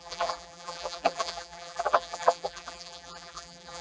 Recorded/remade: remade